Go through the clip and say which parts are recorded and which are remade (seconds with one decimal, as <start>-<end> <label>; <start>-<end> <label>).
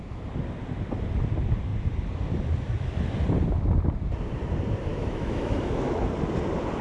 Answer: 0.0-4.9 recorded; 4.9-6.1 remade; 6.1-6.8 recorded